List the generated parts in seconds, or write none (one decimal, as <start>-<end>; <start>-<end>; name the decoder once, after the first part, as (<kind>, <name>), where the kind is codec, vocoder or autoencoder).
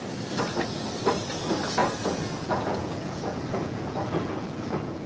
1.8-5.1 (vocoder, Vocos)